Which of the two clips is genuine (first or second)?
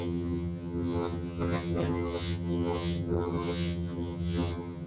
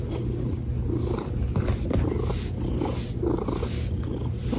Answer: second